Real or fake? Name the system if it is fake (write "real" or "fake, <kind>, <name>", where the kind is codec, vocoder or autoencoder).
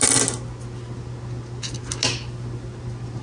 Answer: real